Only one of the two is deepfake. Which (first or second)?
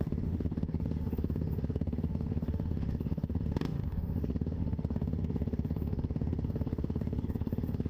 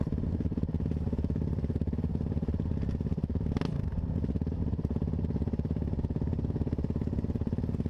first